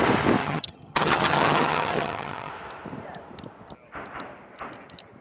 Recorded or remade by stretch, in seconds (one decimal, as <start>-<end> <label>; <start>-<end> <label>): 0.0-0.4 recorded; 0.4-2.5 remade; 2.5-5.2 recorded